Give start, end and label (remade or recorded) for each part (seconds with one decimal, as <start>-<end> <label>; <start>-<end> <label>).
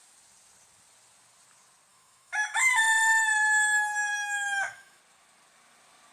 0.0-1.9 recorded; 1.9-2.8 remade; 2.8-4.1 recorded; 4.1-5.0 remade; 5.0-6.1 recorded